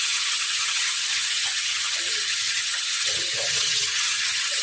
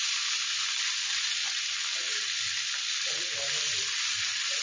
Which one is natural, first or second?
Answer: second